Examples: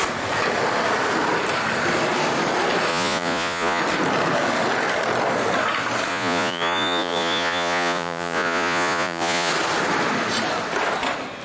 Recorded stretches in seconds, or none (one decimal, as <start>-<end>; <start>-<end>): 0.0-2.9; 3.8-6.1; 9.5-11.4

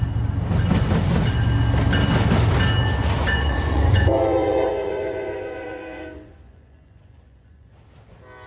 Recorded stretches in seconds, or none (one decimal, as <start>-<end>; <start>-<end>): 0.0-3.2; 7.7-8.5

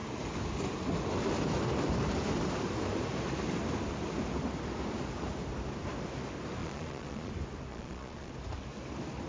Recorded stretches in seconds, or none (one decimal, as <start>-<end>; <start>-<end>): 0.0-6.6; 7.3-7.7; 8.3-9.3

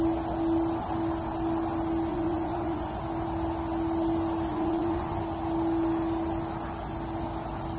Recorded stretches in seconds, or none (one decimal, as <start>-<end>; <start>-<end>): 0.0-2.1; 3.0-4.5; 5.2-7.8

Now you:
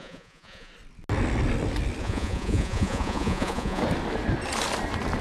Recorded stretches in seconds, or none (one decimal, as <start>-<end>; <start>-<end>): 0.7-2.0; 3.8-5.2

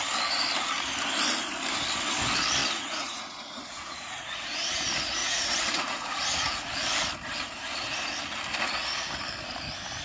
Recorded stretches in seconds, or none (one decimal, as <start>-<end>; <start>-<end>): 0.0-2.6; 4.8-5.2; 6.7-10.0